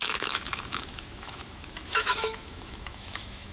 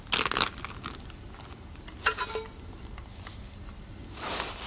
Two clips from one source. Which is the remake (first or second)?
first